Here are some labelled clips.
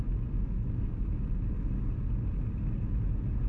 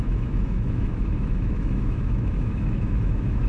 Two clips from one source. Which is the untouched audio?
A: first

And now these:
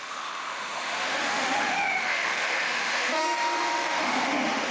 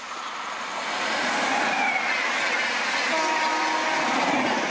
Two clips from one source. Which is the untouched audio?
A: second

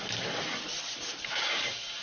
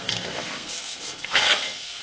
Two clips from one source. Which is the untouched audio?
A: first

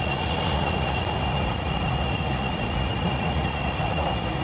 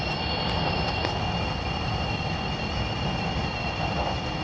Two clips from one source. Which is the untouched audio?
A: second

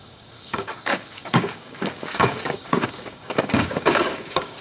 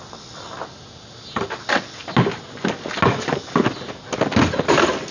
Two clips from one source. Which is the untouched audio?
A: second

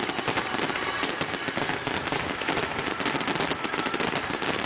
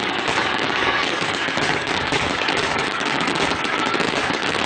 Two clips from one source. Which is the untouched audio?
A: first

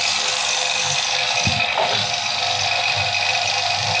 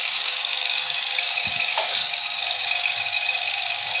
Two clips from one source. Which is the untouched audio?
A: first